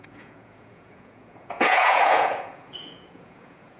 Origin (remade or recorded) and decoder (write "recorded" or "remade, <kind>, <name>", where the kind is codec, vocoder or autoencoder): remade, vocoder, Vocos